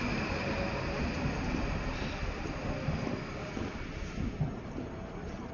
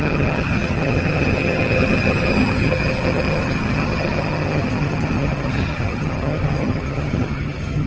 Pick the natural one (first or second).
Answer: first